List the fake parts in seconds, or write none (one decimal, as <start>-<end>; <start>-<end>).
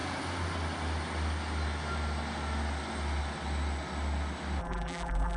4.6-5.4